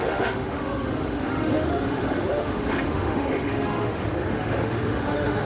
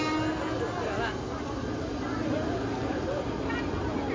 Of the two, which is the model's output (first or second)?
first